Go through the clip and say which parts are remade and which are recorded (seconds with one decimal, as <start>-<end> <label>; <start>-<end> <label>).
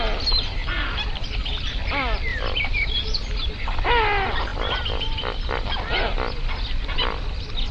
0.0-0.6 recorded; 0.6-1.4 remade; 1.4-2.3 recorded; 2.3-3.4 remade; 3.4-4.5 recorded; 4.5-6.4 remade; 6.4-7.7 recorded